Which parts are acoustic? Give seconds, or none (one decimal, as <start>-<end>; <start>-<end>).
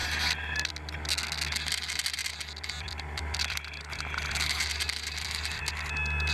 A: 0.0-2.2; 5.6-6.3